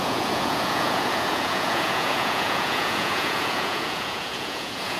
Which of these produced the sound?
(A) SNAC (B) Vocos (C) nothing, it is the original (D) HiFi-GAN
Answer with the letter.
B